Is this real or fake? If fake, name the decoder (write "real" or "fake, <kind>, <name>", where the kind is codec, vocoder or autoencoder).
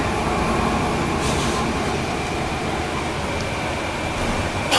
real